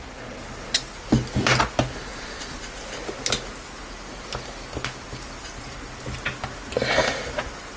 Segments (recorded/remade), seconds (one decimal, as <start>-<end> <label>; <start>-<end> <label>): 0.0-7.8 recorded